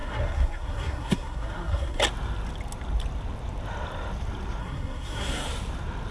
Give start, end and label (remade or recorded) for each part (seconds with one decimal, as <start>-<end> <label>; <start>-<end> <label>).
0.0-2.0 remade; 2.0-4.6 recorded; 4.6-5.5 remade; 5.5-6.1 recorded